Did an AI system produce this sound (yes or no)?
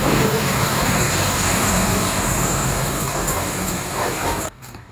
yes